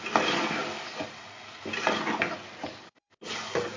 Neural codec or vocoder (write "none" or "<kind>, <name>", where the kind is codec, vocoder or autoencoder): none